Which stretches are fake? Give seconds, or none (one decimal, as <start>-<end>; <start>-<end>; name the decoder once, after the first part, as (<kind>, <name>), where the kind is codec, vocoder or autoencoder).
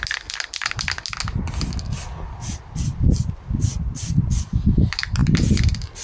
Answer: none